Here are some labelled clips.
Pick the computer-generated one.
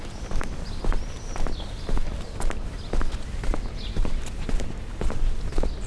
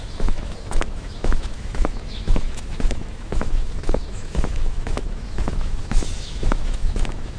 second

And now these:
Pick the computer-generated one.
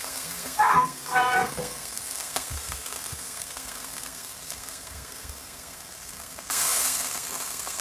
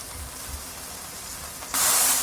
first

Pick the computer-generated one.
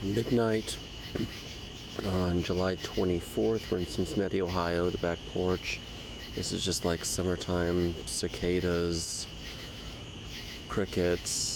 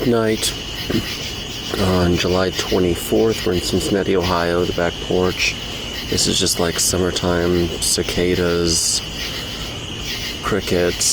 first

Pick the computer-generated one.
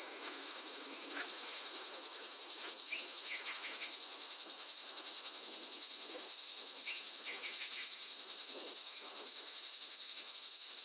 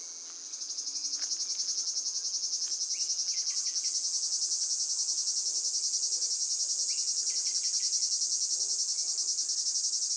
first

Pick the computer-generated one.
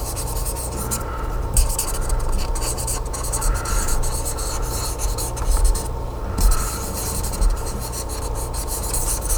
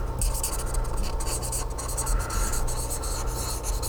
first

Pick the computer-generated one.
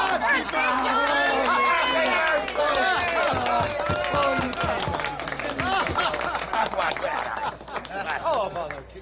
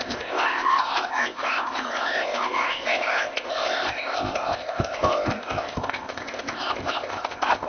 second